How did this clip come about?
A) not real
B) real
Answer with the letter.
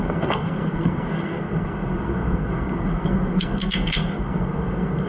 A